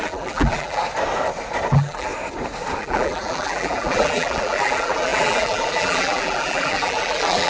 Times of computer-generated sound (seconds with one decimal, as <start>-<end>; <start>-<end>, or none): 0.0-0.8; 1.7-2.1; 2.8-7.5